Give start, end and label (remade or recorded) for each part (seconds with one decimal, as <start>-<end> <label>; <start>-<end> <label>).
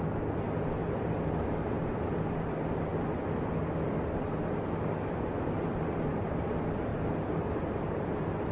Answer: 0.0-0.8 recorded; 0.8-1.9 remade; 1.9-8.5 recorded